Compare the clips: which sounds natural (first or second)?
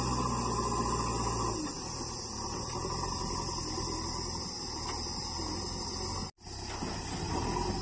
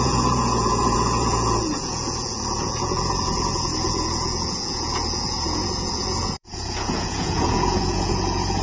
first